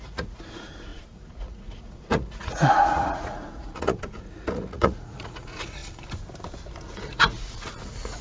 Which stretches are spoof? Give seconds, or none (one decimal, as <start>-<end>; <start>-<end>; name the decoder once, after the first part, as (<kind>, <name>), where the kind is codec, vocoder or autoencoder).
0.0-5.8 (vocoder, Vocos); 6.9-8.2